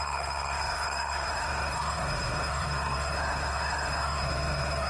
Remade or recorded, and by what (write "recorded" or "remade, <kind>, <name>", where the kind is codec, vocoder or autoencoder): remade, codec, SNAC